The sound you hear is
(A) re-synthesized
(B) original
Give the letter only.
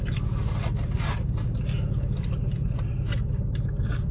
B